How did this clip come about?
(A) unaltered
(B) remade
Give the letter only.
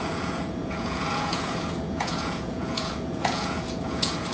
B